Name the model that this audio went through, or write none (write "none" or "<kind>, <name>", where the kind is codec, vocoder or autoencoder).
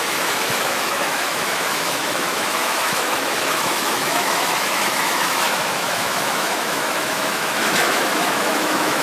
autoencoder, DAC-VAE